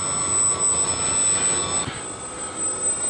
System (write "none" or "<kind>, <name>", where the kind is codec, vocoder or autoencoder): none